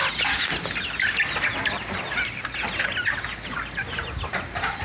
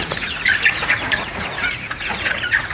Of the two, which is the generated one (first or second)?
second